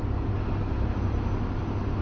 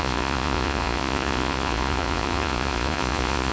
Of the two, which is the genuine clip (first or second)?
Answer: first